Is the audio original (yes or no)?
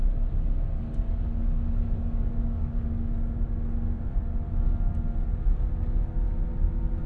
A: yes